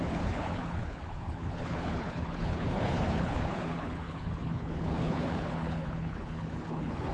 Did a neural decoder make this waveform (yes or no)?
yes